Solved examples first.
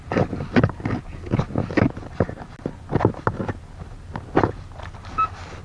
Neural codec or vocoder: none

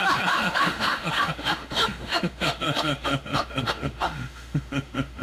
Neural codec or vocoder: autoencoder, DAC-VAE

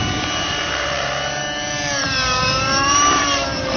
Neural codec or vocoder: vocoder, BigVGAN v2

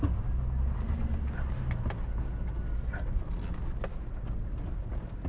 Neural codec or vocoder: none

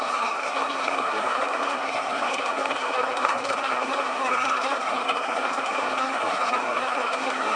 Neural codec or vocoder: codec, SNAC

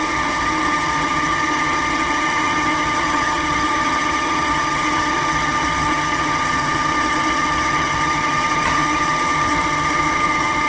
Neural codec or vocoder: vocoder, HiFi-GAN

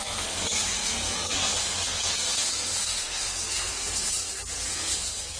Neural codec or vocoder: codec, SNAC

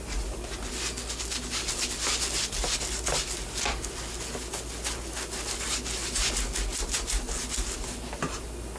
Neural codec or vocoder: none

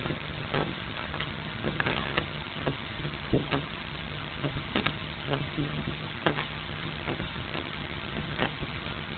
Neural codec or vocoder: vocoder, HiFi-GAN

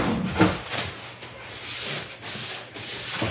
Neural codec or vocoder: none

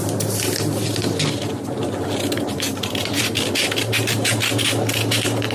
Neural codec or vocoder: none